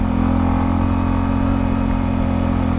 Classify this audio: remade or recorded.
recorded